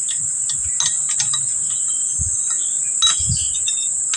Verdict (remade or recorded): recorded